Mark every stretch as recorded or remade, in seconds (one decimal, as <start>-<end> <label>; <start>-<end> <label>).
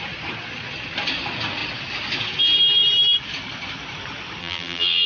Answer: 0.0-4.4 recorded; 4.4-5.1 remade